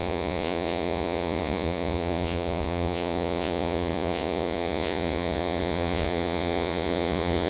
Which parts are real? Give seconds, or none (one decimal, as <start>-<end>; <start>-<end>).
none